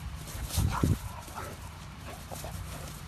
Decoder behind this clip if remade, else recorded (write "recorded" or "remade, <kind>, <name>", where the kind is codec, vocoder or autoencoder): remade, vocoder, BigVGAN v2